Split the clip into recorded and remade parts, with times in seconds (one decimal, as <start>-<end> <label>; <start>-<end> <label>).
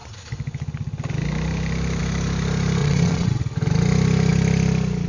0.0-2.8 recorded; 2.8-3.4 remade; 3.4-5.1 recorded